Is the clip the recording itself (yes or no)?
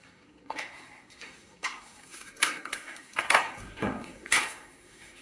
no